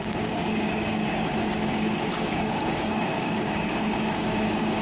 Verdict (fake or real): fake